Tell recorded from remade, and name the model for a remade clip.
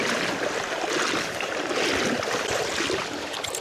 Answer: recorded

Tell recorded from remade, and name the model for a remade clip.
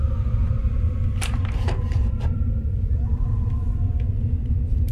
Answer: remade, vocoder, BigVGAN v2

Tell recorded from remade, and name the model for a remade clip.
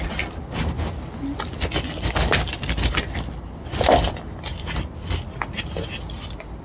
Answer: recorded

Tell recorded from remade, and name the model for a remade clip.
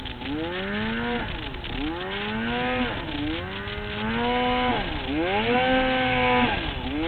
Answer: recorded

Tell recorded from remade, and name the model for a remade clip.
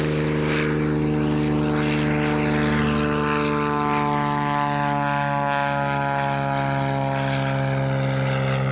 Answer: recorded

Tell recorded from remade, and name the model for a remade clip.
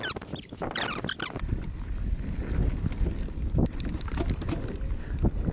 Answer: recorded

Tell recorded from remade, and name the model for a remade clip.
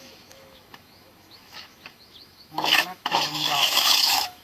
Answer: remade, autoencoder, DAC-VAE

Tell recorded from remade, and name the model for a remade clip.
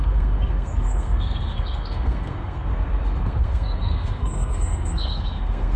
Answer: remade, codec, SNAC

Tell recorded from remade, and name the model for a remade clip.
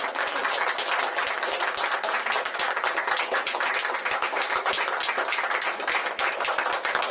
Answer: recorded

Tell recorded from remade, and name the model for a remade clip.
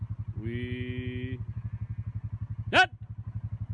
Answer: recorded